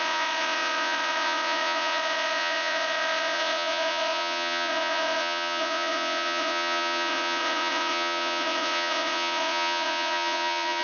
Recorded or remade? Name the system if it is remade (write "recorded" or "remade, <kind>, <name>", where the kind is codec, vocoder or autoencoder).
remade, vocoder, Vocos